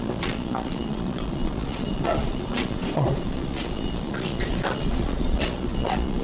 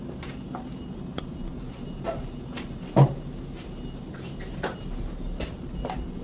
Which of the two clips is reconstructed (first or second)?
first